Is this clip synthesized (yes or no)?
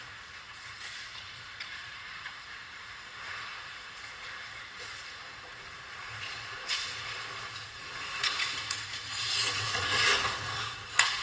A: yes